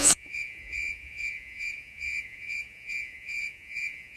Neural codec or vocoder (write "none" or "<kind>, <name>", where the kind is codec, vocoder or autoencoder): vocoder, Vocos